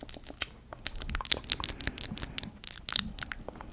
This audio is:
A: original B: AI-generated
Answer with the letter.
A